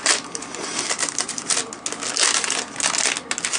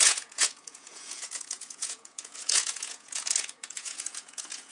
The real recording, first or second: first